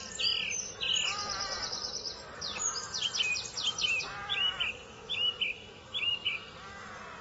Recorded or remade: remade